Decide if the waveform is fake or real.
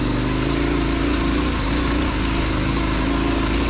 real